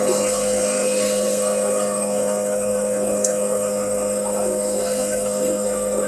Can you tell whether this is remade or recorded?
remade